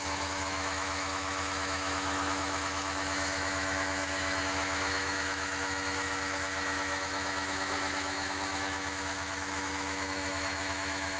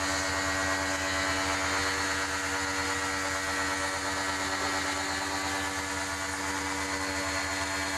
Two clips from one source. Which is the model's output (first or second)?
first